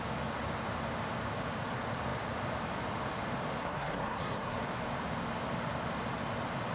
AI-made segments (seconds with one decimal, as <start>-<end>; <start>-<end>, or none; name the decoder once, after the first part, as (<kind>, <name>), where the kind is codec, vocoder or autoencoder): 3.6-4.6 (codec, SNAC)